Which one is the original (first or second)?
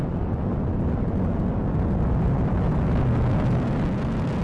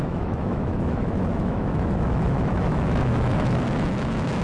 first